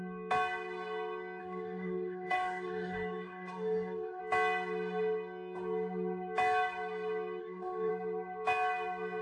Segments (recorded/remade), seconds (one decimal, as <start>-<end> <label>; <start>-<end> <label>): 0.0-1.4 recorded; 1.4-4.2 remade; 4.2-7.4 recorded; 7.4-7.9 remade; 7.9-9.2 recorded